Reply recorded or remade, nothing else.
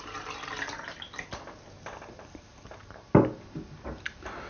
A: recorded